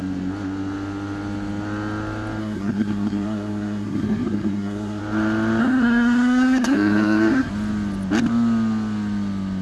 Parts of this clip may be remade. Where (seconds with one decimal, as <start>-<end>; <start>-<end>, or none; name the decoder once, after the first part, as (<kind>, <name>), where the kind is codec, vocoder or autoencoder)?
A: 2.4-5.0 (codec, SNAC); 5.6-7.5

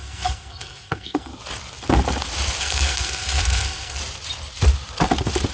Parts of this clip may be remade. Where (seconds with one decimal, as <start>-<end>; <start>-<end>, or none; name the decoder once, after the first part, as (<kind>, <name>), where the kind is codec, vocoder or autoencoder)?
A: 0.0-1.3 (codec, SNAC); 2.6-4.0

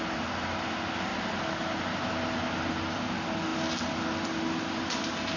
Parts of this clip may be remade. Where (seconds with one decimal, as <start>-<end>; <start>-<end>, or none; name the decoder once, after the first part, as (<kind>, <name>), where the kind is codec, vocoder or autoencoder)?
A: none

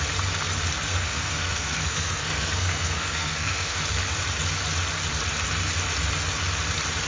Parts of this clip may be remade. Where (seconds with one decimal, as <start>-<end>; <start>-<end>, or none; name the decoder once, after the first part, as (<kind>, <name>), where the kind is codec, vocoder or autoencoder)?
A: 0.9-3.8 (codec, SNAC)

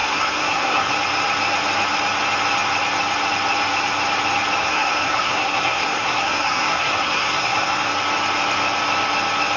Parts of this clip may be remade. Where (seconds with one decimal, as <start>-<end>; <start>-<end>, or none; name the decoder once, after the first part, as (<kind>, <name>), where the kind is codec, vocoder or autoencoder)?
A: 0.0-0.9 (codec, SNAC); 4.6-7.9

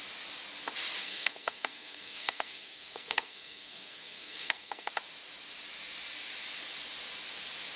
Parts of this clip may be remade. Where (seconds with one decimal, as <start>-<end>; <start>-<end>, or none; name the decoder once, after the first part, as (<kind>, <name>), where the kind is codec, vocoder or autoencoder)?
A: 1.0-4.9 (codec, SNAC)

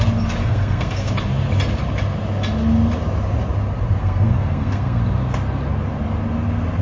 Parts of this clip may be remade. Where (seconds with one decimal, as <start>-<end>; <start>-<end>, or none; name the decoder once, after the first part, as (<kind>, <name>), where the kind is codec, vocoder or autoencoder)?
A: 0.4-1.1 (codec, SNAC); 4.0-5.0